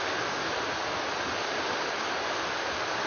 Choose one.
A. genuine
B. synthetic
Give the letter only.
A